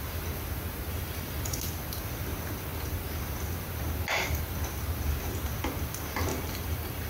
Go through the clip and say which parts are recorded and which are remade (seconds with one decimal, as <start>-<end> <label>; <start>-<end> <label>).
0.0-0.9 recorded; 0.9-1.6 remade; 1.6-6.3 recorded; 6.3-7.1 remade